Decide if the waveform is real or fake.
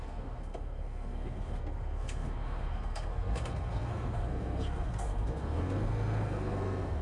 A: fake